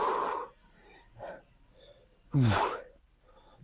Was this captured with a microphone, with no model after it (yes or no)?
yes